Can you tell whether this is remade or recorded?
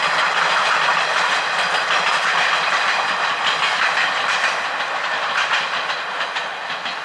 recorded